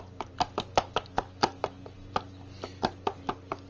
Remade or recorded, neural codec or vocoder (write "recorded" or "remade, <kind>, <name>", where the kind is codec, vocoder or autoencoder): recorded